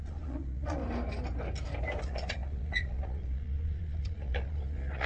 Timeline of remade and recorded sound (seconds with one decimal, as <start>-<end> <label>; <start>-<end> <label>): 0.0-0.8 remade; 0.8-2.0 recorded; 2.0-5.1 remade